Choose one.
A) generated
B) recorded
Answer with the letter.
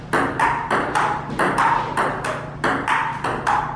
B